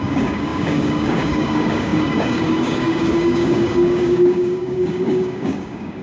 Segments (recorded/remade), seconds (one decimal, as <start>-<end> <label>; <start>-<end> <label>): 0.0-6.0 remade